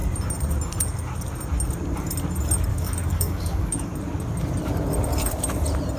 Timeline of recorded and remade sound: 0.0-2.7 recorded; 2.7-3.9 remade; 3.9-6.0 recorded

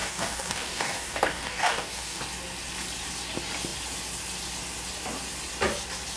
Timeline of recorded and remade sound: 0.0-2.2 remade; 2.2-6.2 recorded

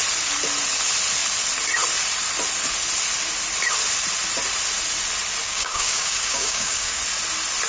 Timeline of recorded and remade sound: 0.0-5.4 recorded; 5.4-7.0 remade; 7.0-7.7 recorded

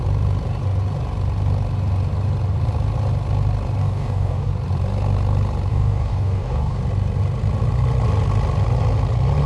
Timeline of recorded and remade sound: 0.0-3.8 recorded; 3.8-4.5 remade; 4.5-5.7 recorded; 5.7-6.8 remade; 6.8-9.5 recorded

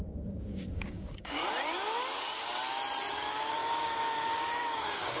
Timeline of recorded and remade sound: 0.0-1.4 remade; 1.4-3.1 recorded; 3.1-5.2 remade

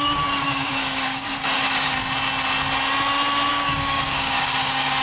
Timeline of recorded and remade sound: 0.0-2.0 remade; 2.0-3.5 recorded; 3.5-5.0 remade

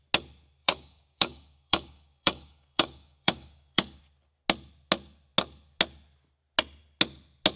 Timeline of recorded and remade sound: 0.0-0.6 recorded; 0.6-4.0 remade; 4.0-7.6 recorded